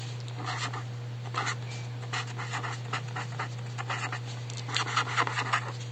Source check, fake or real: real